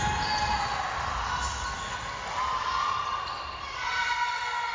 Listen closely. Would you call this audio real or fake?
real